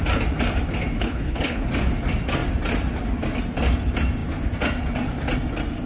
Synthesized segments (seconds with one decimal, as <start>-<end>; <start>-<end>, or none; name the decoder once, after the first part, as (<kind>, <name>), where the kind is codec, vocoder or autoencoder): 1.0-1.7 (codec, HILCodec)

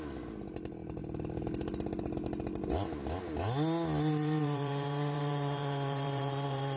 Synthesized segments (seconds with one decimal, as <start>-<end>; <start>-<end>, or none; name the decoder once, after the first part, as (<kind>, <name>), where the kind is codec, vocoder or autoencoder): 4.1-6.8 (vocoder, BigVGAN v2)

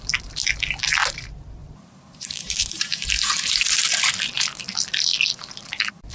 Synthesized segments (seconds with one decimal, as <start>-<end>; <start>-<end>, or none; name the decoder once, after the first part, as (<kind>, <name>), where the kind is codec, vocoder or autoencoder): 1.6-4.1 (vocoder, BigVGAN v2)

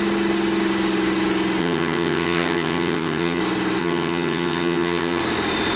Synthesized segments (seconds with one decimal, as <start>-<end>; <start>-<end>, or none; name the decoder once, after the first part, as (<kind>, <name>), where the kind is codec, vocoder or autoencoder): 1.6-3.4 (vocoder, HiFi-GAN); 3.8-5.2

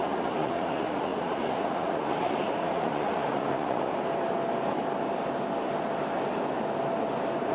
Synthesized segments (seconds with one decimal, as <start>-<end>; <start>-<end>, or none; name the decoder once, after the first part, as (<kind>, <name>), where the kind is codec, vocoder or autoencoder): 0.0-3.9 (vocoder, Vocos)